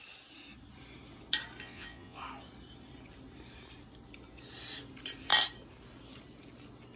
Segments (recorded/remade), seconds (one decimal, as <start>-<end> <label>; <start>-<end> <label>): 0.0-1.6 recorded; 1.6-2.2 remade; 2.2-7.0 recorded